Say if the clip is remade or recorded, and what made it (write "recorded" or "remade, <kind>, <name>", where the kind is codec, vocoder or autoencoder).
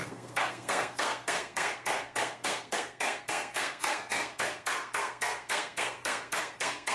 remade, codec, SNAC